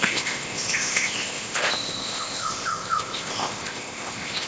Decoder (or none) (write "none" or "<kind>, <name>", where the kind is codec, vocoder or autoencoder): codec, ZipCodec